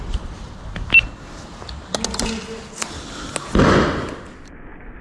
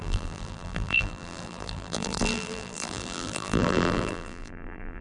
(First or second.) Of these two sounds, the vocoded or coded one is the second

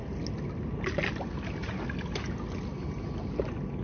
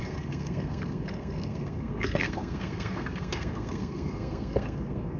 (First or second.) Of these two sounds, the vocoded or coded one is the second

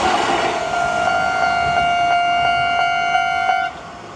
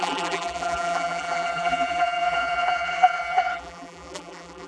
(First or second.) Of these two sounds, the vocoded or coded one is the second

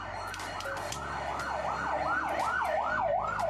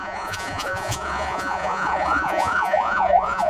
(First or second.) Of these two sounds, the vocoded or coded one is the second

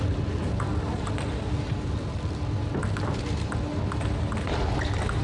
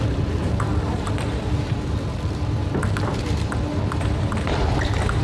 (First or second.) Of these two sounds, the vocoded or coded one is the second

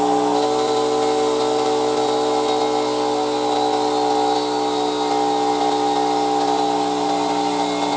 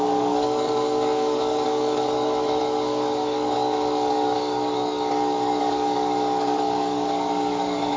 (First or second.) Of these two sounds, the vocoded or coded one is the second